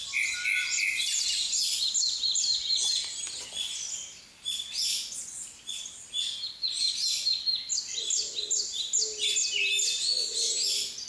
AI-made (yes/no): no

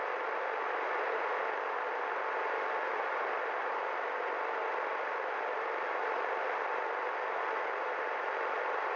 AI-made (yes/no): yes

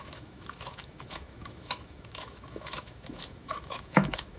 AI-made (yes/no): yes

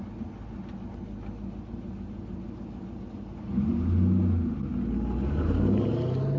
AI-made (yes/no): no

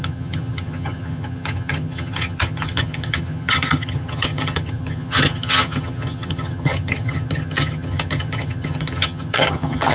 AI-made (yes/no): yes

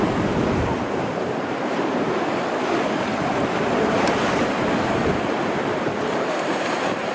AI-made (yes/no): yes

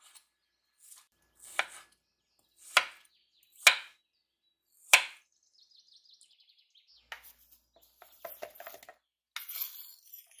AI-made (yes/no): no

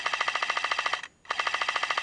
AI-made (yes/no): no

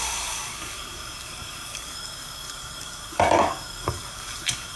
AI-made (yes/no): yes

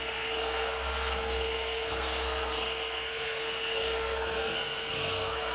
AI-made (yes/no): yes